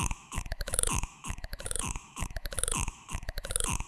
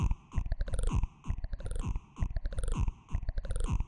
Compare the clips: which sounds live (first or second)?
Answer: second